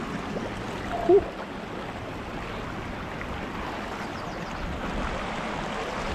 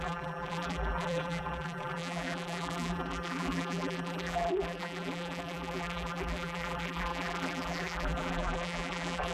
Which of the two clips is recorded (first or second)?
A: first